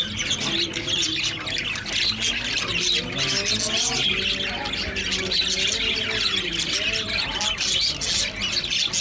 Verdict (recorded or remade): recorded